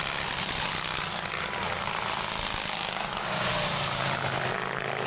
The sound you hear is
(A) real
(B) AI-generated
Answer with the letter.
A